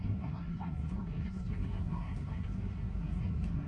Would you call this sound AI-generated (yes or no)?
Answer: yes